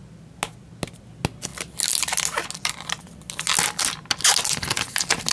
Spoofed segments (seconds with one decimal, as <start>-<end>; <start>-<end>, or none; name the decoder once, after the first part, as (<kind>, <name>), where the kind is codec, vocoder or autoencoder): none